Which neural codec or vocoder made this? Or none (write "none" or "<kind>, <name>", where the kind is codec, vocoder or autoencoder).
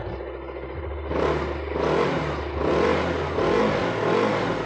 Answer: none